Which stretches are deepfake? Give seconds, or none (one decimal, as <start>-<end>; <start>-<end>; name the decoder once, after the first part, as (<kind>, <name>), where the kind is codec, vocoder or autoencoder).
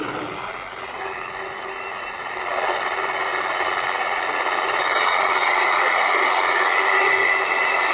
none